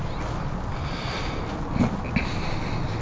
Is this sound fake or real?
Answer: real